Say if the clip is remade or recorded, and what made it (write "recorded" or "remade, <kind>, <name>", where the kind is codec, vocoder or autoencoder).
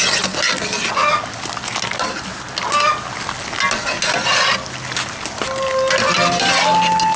recorded